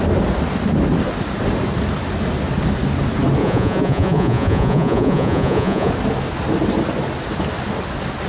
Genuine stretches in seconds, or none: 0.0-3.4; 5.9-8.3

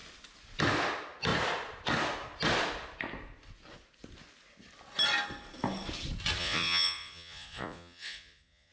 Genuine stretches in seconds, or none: 0.0-6.4